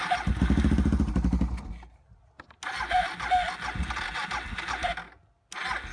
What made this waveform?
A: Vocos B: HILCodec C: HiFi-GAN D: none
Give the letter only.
D